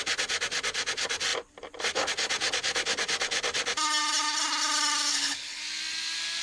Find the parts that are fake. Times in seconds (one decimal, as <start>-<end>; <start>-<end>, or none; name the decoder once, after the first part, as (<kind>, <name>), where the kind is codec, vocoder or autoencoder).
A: 5.1-5.6 (codec, HILCodec)